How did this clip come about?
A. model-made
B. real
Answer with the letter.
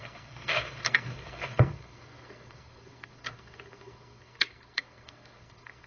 A